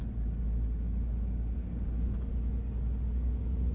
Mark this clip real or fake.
real